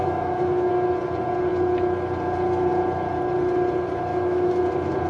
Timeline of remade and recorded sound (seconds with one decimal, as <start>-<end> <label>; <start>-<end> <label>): 0.0-0.7 remade; 0.7-4.1 recorded; 4.1-4.6 remade; 4.6-5.1 recorded